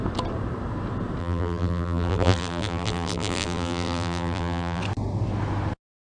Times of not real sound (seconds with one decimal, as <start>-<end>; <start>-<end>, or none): 1.2-4.8